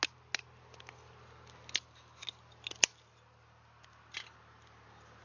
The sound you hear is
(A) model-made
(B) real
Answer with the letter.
B